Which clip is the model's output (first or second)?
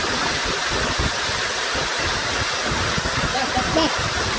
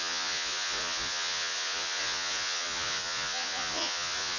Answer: second